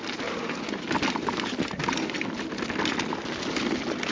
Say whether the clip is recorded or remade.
recorded